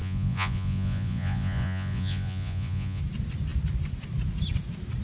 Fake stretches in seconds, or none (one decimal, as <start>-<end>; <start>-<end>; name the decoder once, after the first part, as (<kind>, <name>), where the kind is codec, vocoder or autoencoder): 0.0-3.0 (vocoder, Vocos)

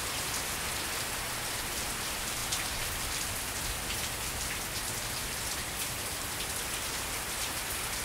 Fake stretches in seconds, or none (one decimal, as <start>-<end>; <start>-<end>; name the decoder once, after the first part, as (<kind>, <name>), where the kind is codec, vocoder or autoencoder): 5.2-7.1 (vocoder, BigVGAN v2)

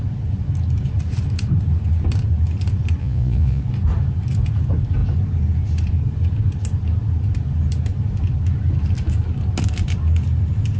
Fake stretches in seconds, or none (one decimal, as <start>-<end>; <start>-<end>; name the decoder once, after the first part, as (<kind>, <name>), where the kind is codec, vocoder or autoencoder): 3.0-3.6 (vocoder, Vocos)

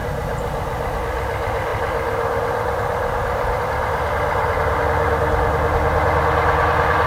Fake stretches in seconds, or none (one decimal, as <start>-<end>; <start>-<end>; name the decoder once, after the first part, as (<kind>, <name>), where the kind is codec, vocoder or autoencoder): 0.0-1.0 (vocoder, BigVGAN v2)

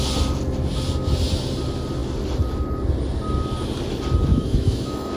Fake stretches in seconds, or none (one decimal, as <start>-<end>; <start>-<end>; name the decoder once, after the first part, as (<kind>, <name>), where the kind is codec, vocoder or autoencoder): 4.3-5.2 (autoencoder, DAC-VAE)

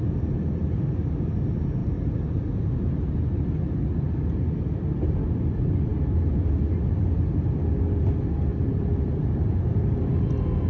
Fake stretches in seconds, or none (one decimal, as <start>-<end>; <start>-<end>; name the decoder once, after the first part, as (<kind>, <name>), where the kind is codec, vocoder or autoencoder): 1.8-3.6 (vocoder, BigVGAN v2); 8.5-10.1

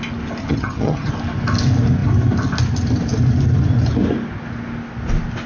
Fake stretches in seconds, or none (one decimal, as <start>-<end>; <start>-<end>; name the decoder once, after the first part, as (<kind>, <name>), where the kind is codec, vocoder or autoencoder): 0.4-1.1 (vocoder, HiFi-GAN)